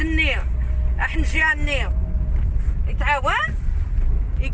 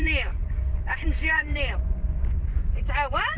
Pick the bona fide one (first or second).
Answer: first